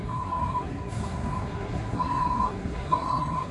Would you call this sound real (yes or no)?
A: no